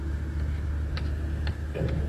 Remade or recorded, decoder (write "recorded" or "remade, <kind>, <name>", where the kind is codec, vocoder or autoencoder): recorded